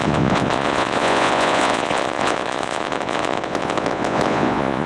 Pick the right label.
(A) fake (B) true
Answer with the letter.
A